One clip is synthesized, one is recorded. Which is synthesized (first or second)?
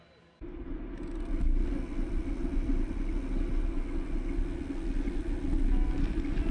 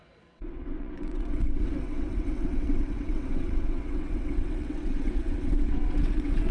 second